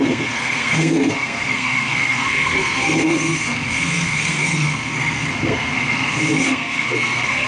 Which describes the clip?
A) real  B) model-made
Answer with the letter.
B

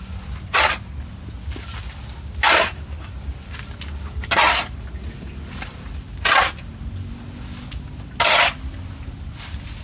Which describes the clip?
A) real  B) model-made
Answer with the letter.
A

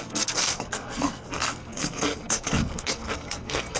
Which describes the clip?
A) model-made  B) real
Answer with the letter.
A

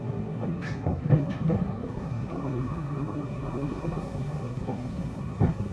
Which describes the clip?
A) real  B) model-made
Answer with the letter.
B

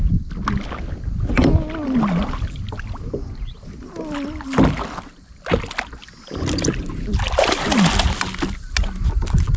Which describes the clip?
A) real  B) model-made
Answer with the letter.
A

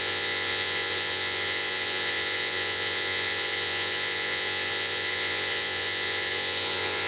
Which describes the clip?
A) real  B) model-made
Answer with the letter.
B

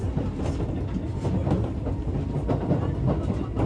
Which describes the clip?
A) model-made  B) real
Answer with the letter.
B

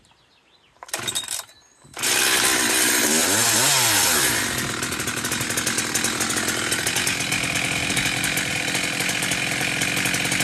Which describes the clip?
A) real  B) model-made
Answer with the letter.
A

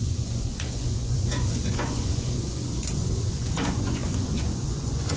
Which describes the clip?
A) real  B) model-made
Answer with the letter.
B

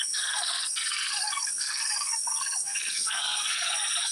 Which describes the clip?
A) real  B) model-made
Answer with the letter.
B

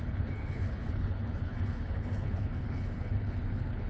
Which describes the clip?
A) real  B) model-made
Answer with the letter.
B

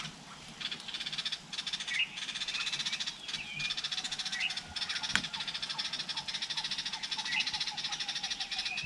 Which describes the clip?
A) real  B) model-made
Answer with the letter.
A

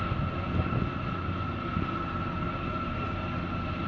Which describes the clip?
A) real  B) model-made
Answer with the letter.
A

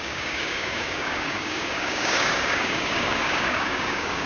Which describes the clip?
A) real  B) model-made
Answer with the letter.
B